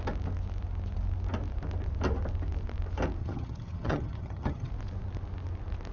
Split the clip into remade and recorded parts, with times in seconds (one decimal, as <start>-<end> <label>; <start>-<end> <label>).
0.0-3.2 recorded; 3.2-4.7 remade; 4.7-5.9 recorded